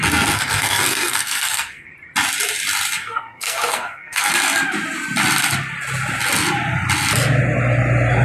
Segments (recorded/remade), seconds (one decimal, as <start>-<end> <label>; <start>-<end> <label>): 0.0-1.9 remade; 1.9-3.0 recorded; 3.0-4.3 remade; 4.3-8.2 recorded